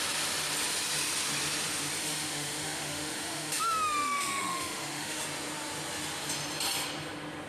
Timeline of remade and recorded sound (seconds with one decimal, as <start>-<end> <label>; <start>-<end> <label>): 0.0-2.0 recorded; 2.0-5.2 remade; 5.2-7.5 recorded